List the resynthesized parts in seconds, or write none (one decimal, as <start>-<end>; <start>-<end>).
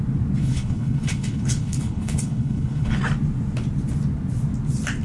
0.4-3.0